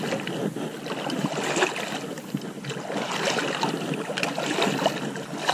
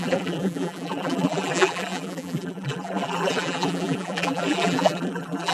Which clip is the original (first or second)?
first